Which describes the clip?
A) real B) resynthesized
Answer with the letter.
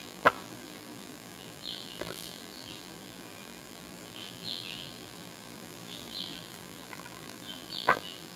B